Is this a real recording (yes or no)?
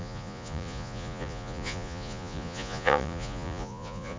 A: no